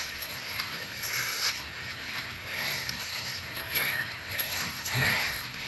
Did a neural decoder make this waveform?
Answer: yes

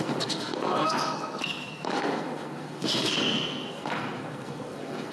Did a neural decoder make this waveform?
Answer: yes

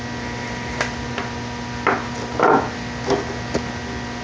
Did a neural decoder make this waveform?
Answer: no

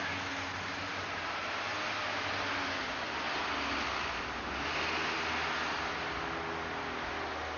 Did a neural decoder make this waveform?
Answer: no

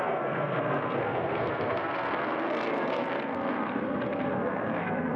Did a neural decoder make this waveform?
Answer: yes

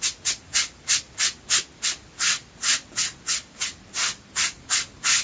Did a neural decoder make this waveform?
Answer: no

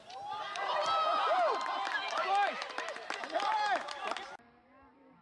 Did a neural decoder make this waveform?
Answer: no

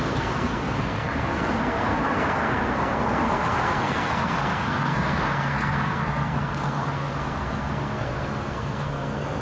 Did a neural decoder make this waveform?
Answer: yes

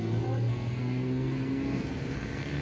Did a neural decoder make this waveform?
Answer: yes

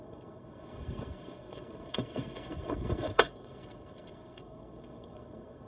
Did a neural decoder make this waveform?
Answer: yes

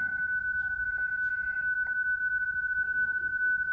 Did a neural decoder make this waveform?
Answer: no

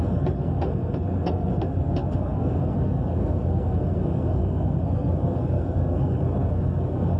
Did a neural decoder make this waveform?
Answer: yes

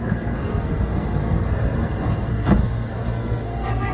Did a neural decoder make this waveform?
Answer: yes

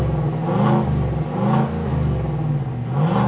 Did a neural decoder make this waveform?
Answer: no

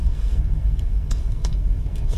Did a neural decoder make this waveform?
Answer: yes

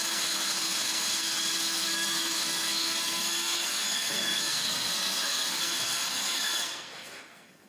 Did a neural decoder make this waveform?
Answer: yes